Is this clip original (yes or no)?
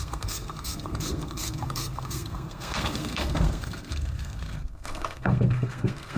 no